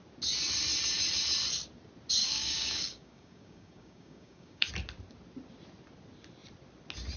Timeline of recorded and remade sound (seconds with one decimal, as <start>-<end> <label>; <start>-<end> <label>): 0.0-2.2 recorded; 2.2-4.7 remade; 4.7-7.2 recorded